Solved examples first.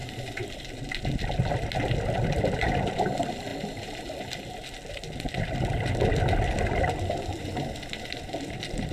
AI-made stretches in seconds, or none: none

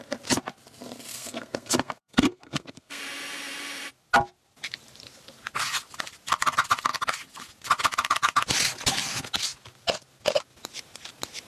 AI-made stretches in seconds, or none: 1.1-3.0

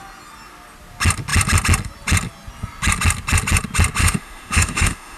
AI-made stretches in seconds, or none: 4.0-5.2

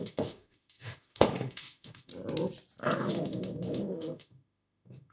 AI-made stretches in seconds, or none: 0.0-2.1; 3.1-5.1

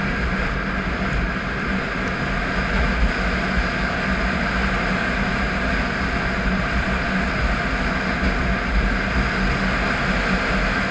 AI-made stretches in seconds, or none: none

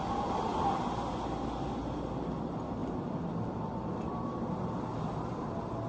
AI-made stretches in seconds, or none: none